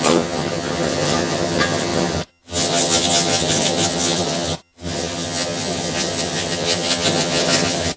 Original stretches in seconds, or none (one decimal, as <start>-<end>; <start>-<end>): none